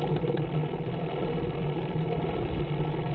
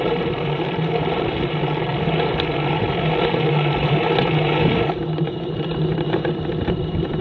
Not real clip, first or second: second